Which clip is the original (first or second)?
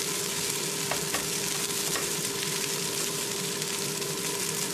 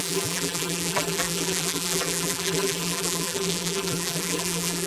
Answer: first